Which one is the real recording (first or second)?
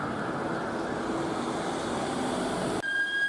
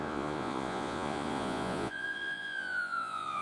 first